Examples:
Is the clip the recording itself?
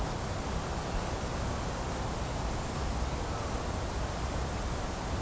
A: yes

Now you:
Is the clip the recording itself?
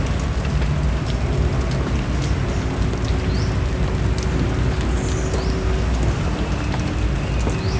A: yes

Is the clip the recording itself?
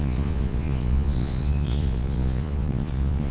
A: no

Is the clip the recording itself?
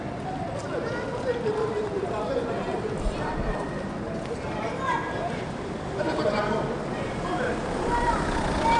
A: yes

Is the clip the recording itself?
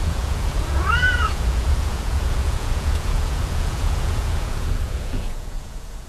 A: no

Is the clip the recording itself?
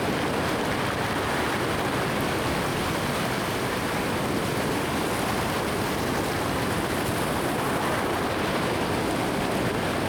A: yes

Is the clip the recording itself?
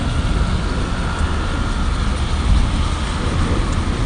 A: yes